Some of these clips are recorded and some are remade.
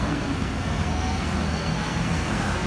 remade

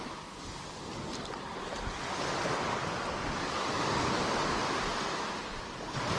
recorded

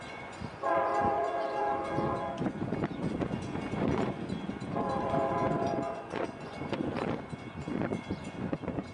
remade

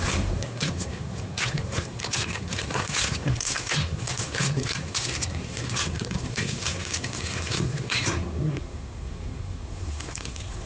remade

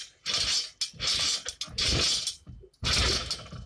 recorded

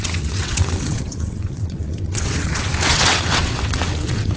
remade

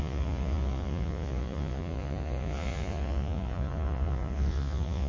remade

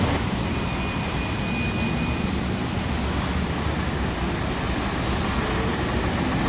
recorded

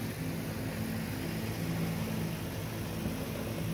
recorded